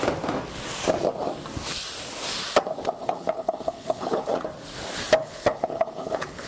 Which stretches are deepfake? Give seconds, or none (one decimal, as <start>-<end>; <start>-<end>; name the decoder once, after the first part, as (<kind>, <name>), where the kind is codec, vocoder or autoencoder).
3.0-4.3 (codec, HILCodec); 5.2-6.5